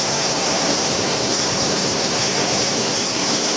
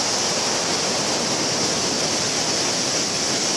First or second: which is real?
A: second